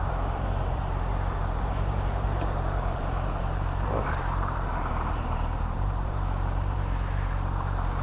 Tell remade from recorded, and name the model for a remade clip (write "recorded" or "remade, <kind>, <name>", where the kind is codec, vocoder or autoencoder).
remade, vocoder, BigVGAN v2